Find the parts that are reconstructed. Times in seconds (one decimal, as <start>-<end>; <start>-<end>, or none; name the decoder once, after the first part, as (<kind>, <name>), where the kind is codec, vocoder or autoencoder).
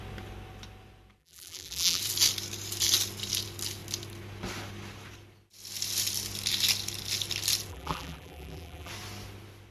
1.2-2.0 (vocoder, BigVGAN v2); 7.7-8.9